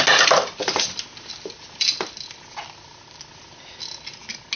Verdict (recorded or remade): recorded